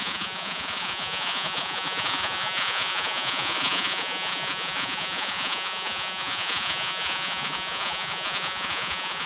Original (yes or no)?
no